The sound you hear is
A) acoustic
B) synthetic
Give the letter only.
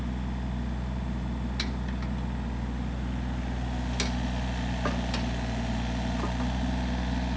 A